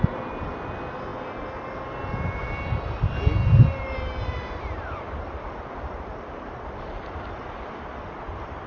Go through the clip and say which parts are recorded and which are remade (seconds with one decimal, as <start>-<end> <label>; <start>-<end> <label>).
0.0-2.4 recorded; 2.4-7.4 remade; 7.4-8.7 recorded

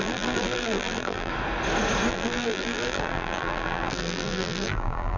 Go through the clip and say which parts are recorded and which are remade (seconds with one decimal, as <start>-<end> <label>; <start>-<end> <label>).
0.0-1.3 remade; 1.3-2.1 recorded; 2.1-5.2 remade

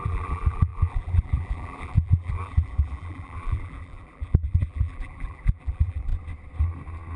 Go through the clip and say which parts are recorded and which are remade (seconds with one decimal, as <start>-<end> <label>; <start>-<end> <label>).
0.0-6.1 remade; 6.1-7.2 recorded

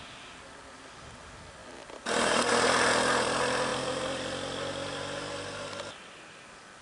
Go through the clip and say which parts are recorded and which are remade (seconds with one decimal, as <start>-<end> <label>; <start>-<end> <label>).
0.0-6.8 recorded

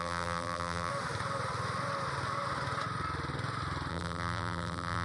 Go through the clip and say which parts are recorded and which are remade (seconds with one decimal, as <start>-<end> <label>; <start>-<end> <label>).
0.0-0.9 remade; 0.9-3.9 recorded; 3.9-5.0 remade

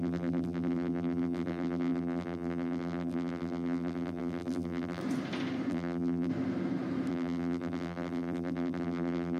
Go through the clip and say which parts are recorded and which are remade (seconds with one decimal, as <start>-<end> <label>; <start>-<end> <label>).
0.0-5.0 remade; 5.0-5.7 recorded; 5.7-6.3 remade; 6.3-7.1 recorded; 7.1-9.4 remade

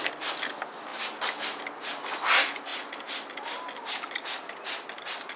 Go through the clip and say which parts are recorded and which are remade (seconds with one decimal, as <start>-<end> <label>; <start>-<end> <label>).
0.0-5.4 recorded